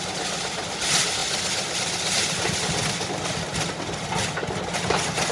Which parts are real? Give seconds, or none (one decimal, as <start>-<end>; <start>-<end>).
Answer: 0.0-5.3

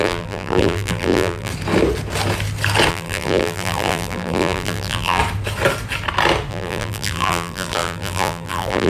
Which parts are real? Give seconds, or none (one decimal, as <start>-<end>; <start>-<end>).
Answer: 1.5-2.9; 5.2-6.5